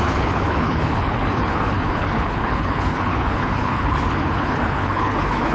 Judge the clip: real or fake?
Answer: fake